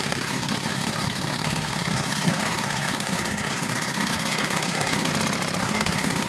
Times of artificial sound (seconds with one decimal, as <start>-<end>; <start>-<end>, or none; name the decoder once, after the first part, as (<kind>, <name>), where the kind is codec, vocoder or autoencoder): 0.0-5.1 (codec, SNAC); 5.6-6.3